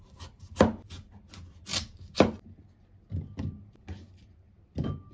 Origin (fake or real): real